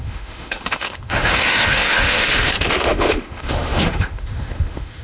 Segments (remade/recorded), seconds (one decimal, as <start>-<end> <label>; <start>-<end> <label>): 0.0-5.0 remade